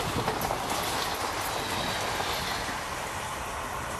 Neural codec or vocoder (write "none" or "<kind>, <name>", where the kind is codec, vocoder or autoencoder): none